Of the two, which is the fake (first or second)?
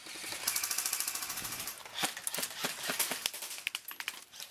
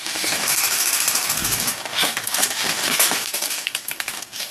second